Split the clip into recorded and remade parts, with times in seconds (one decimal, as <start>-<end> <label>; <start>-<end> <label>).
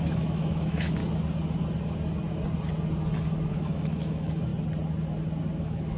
0.0-1.0 remade; 1.0-3.5 recorded; 3.5-4.5 remade; 4.5-5.6 recorded; 5.6-6.0 remade